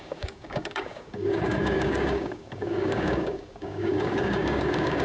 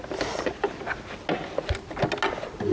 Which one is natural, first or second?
second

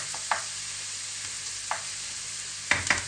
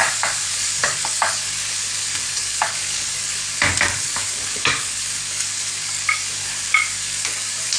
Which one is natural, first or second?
first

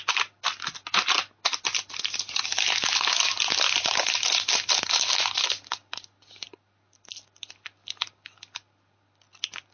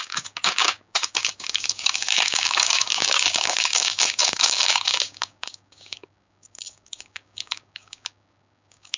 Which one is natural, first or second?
first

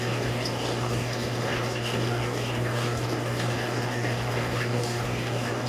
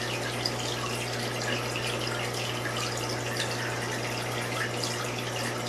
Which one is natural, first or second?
second